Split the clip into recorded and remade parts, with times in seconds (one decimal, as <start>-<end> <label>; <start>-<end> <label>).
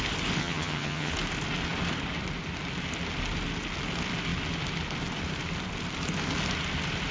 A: 0.0-0.4 recorded; 0.4-1.1 remade; 1.1-7.1 recorded